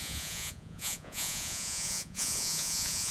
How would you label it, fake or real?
fake